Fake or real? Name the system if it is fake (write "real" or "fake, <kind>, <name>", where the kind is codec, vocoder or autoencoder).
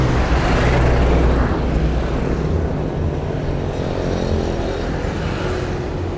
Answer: real